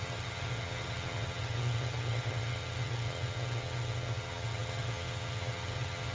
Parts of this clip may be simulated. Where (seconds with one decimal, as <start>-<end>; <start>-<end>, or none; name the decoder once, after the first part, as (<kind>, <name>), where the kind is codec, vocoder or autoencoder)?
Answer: 0.0-6.1 (vocoder, HiFi-GAN)